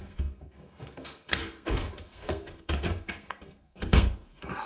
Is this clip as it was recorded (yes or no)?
no